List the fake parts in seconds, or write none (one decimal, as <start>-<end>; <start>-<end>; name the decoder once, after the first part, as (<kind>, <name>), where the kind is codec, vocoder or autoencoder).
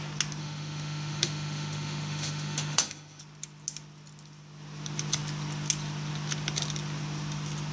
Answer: 0.4-3.2 (autoencoder, DAC-VAE)